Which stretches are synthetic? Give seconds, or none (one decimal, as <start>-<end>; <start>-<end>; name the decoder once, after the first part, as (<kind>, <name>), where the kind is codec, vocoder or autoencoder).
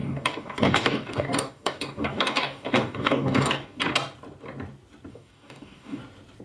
0.0-3.8 (codec, DAC); 5.1-6.0